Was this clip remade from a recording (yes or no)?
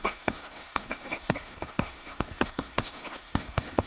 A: yes